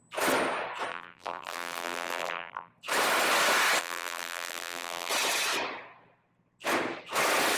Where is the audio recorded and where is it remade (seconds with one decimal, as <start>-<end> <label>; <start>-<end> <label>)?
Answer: 0.0-0.9 recorded; 0.9-2.7 remade; 2.7-3.8 recorded; 3.8-5.1 remade; 5.1-7.6 recorded